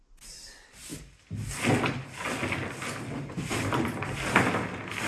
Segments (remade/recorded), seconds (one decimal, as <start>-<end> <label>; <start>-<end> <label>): 0.0-0.9 remade; 0.9-1.4 recorded; 1.4-5.1 remade